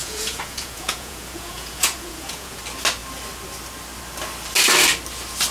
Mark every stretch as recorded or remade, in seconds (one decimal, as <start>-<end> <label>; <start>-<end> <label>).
0.0-2.6 remade; 2.6-5.5 recorded